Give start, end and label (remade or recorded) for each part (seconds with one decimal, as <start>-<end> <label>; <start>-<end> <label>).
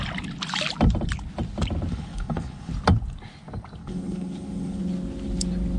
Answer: 0.0-1.9 recorded; 1.9-2.7 remade; 2.7-3.8 recorded; 3.8-4.8 remade; 4.8-5.8 recorded